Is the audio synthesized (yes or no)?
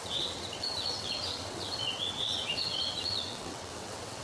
yes